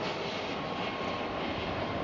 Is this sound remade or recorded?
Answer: recorded